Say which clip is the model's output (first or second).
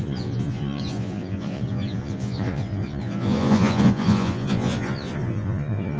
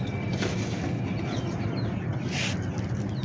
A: first